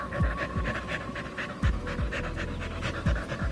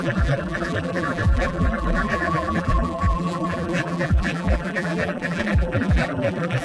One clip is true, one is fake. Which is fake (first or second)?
second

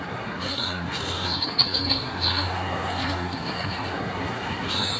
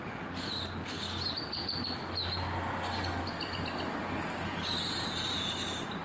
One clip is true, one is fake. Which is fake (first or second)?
first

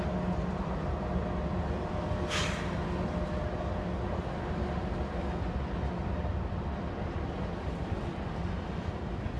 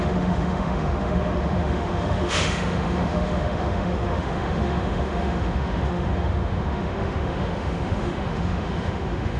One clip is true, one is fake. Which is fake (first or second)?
second